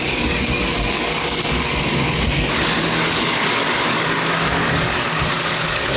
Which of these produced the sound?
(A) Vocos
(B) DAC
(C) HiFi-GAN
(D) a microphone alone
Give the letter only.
B